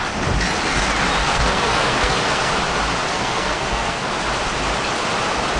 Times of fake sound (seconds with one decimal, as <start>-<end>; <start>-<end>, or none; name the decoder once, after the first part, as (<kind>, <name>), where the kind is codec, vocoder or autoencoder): 1.2-2.5 (codec, SNAC); 3.1-4.1